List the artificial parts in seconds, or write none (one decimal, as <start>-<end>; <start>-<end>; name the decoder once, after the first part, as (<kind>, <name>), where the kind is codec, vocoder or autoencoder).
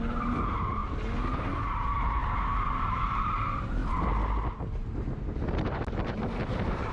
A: 0.0-0.8 (vocoder, BigVGAN v2); 1.8-2.2; 3.0-3.8; 5.7-6.9